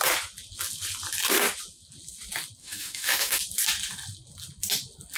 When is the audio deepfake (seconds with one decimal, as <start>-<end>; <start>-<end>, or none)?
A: 2.6-3.4